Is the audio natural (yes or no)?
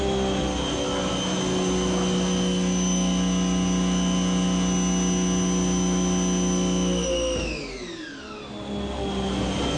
yes